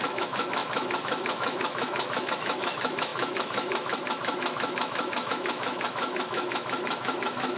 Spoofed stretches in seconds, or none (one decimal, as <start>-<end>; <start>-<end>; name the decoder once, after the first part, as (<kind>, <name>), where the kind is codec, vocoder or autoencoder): 0.0-7.6 (autoencoder, DAC-VAE)